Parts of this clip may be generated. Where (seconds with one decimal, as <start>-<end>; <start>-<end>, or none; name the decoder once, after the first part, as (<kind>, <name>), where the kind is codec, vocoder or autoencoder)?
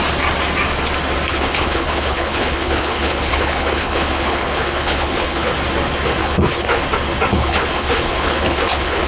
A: 1.3-5.5 (codec, HILCodec); 6.2-6.8; 7.3-9.1